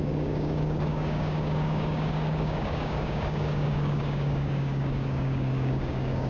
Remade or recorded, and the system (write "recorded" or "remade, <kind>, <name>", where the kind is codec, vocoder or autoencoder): remade, codec, DAC